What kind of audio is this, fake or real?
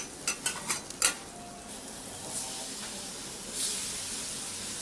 real